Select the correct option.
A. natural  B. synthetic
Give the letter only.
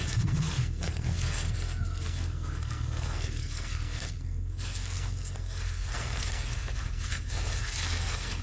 B